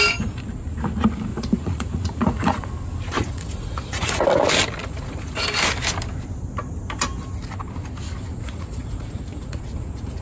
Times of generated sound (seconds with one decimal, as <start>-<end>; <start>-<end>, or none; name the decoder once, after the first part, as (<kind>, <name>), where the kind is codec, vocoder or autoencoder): 1.3-2.7 (vocoder, Vocos); 3.2-4.2; 4.8-5.5; 8.3-10.2

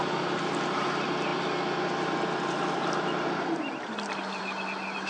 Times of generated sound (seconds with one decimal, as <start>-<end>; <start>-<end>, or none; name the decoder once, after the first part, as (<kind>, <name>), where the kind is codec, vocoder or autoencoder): none

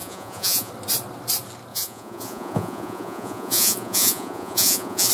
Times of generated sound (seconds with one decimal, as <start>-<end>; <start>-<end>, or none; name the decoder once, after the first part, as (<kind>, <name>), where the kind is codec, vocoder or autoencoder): 0.0-0.7 (vocoder, Vocos); 1.7-5.1

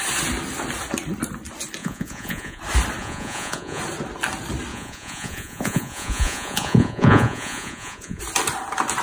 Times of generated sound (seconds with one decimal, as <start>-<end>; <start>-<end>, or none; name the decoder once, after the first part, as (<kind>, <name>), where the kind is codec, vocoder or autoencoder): 1.8-2.6 (vocoder, Vocos); 3.0-3.8; 4.7-8.2

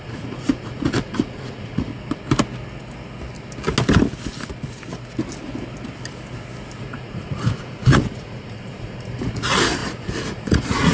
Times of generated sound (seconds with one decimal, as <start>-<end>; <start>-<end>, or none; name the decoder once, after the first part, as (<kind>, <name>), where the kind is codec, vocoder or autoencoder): 0.0-1.9 (vocoder, Vocos); 6.8-10.9

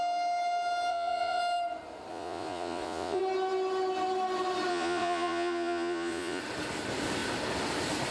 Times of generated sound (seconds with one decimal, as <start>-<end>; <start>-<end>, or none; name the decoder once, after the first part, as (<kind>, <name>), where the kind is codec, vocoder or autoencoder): 0.9-1.4 (vocoder, Vocos); 2.1-3.2; 4.7-6.4

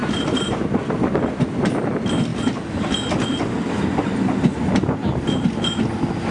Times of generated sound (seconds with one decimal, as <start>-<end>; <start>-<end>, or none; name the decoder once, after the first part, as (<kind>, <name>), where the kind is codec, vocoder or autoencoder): none